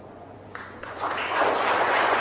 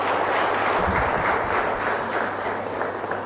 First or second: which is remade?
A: first